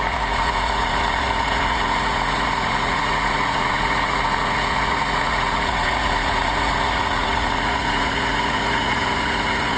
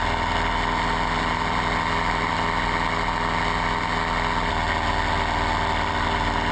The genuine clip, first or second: second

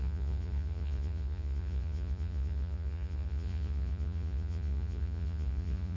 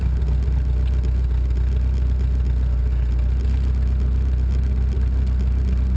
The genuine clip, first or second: second